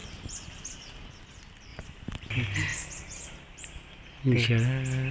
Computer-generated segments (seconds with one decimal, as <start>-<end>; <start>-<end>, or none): 1.7-2.3